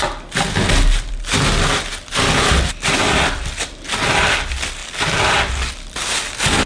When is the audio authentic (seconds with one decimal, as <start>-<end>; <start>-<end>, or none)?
0.0-6.7